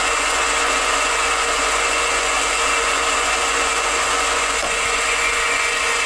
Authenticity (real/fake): fake